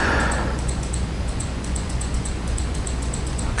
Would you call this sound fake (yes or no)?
yes